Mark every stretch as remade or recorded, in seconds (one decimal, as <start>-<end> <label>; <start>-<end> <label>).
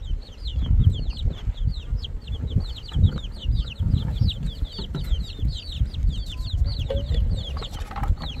0.0-8.4 recorded